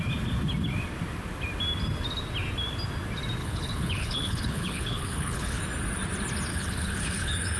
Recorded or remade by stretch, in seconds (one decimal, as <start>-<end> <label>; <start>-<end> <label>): 0.0-3.4 recorded; 3.4-5.6 remade; 5.6-6.5 recorded; 6.5-7.6 remade